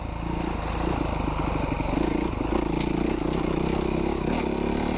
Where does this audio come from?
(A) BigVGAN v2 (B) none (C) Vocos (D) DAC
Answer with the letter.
B